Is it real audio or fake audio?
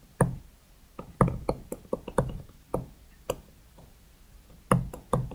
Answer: real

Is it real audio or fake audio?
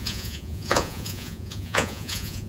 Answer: fake